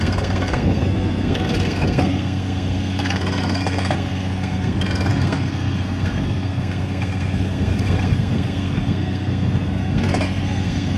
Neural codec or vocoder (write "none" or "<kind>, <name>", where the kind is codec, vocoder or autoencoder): codec, SNAC